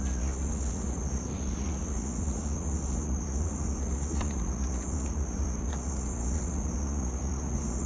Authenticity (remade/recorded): remade